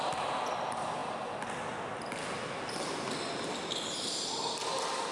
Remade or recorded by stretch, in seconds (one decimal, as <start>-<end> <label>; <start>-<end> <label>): 0.0-5.1 recorded